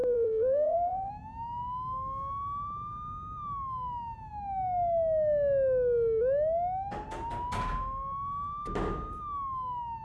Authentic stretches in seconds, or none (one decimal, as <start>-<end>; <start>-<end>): 1.1-10.0